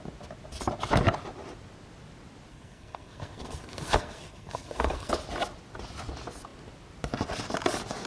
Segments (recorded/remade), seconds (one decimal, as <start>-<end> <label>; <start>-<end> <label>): 0.0-2.5 recorded; 2.5-5.1 remade; 5.1-8.1 recorded